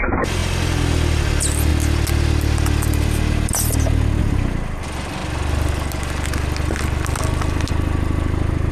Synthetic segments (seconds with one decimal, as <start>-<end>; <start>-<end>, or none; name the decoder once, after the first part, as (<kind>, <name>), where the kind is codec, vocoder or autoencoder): none

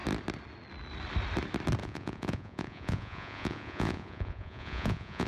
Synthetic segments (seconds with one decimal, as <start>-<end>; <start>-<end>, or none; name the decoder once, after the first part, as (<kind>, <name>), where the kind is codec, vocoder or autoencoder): 1.8-5.3 (vocoder, Vocos)

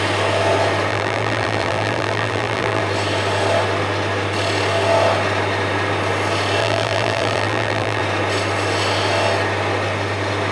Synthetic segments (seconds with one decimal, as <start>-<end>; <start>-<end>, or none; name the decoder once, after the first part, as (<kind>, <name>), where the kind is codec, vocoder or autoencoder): 0.9-2.8 (vocoder, BigVGAN v2); 6.6-8.0

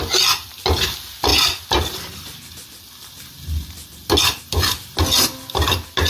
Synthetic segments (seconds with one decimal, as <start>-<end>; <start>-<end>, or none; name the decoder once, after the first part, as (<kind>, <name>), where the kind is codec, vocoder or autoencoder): none